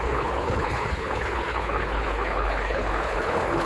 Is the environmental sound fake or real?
fake